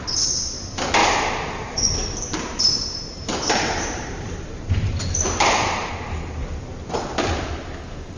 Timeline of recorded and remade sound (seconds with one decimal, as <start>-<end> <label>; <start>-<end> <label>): 0.0-1.0 recorded; 1.0-5.9 remade; 5.9-8.2 recorded